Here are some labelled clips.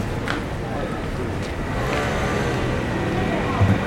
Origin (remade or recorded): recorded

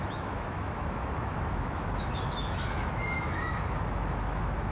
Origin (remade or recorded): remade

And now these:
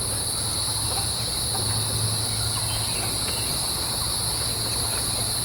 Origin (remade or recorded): recorded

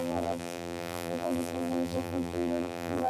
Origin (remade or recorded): remade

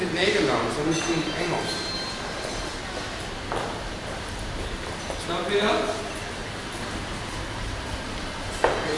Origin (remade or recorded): remade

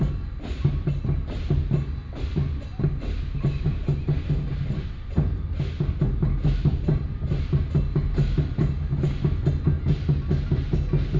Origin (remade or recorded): recorded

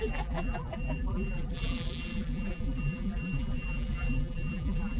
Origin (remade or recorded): remade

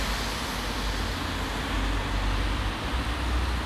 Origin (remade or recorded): recorded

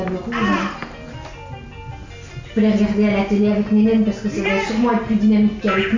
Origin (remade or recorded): recorded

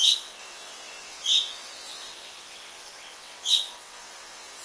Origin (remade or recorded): remade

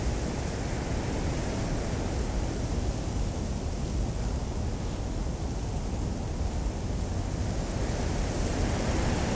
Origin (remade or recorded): recorded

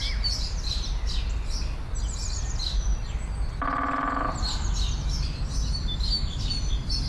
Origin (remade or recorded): recorded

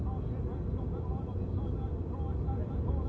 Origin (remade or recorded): recorded